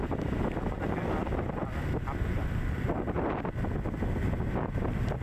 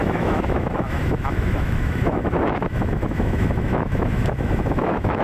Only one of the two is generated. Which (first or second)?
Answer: second